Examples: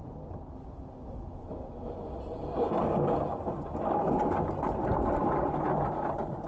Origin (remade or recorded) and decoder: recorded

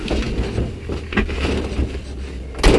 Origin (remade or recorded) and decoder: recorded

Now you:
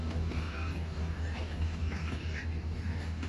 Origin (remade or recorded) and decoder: remade, codec, DAC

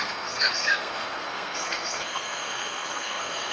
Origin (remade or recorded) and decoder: remade, codec, SNAC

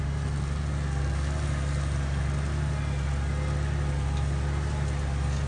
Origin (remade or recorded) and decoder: recorded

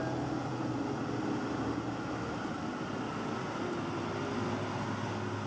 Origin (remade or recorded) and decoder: recorded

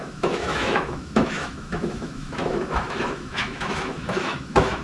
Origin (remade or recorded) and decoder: remade, autoencoder, DAC-VAE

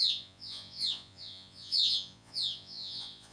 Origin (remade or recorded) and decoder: remade, vocoder, Vocos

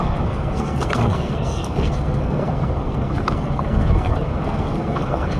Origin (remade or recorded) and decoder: remade, codec, SNAC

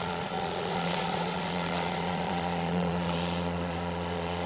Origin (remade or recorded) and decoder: remade, vocoder, Vocos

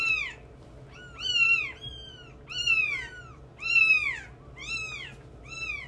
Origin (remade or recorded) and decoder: recorded